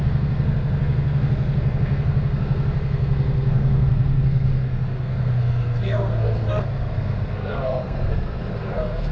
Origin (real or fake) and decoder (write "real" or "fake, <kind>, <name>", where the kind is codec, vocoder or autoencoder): fake, codec, SNAC